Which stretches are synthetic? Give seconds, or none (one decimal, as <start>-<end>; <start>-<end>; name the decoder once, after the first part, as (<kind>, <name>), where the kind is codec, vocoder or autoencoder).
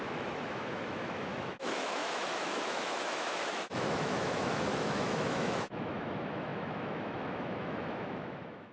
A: 0.0-8.7 (autoencoder, DAC-VAE)